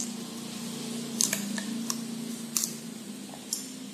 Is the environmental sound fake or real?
real